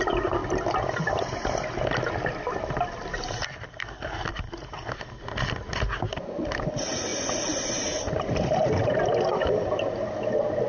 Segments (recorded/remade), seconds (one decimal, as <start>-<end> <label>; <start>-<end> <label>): 0.0-10.7 recorded